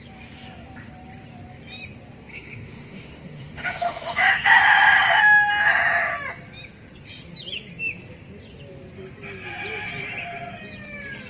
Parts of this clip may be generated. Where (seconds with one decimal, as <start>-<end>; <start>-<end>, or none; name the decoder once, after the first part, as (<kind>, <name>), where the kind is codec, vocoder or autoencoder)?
2.3-4.6 (autoencoder, DAC-VAE)